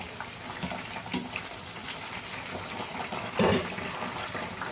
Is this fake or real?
fake